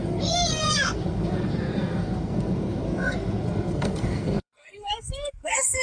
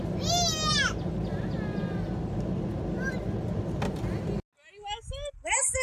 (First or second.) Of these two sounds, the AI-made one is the first